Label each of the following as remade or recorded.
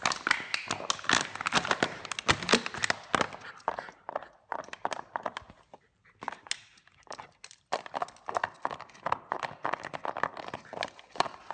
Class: recorded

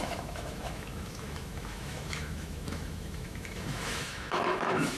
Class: remade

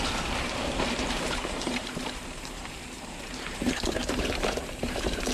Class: remade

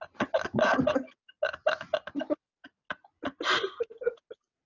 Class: recorded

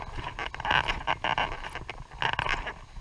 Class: recorded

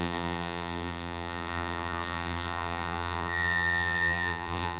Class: remade